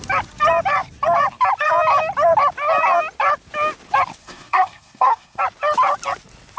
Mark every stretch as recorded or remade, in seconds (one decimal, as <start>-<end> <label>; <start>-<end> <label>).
0.0-4.2 recorded; 4.2-5.4 remade; 5.4-6.6 recorded